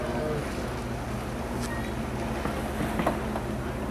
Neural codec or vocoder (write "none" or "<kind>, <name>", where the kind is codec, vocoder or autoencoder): none